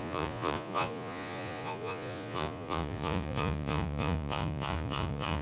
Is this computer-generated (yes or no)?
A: yes